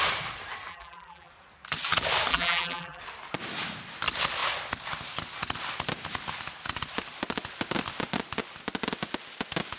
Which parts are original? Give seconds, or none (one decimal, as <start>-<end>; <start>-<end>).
0.0-0.7; 1.3-2.3; 3.0-9.8